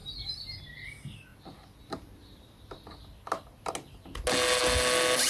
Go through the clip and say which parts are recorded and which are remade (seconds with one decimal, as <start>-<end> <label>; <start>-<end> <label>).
0.0-5.3 recorded